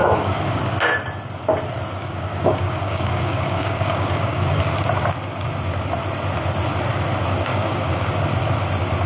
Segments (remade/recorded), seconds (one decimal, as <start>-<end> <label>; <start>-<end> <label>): 0.0-0.6 remade; 0.6-2.0 recorded; 2.0-4.6 remade; 4.6-7.5 recorded; 7.5-8.1 remade; 8.1-9.1 recorded